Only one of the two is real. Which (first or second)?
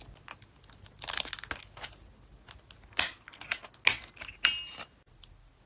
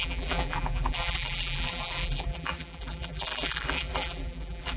first